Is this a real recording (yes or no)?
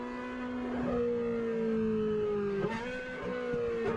yes